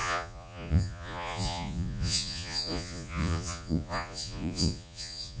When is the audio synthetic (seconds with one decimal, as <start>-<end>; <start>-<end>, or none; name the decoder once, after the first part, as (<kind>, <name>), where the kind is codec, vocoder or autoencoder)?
0.0-5.4 (vocoder, Vocos)